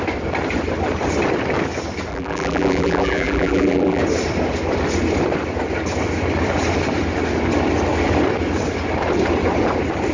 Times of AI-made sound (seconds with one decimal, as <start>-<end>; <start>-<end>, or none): 2.1-4.0